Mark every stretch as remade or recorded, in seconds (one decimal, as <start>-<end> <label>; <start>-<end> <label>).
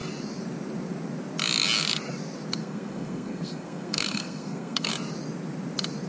0.0-2.6 recorded; 2.6-4.9 remade; 4.9-6.1 recorded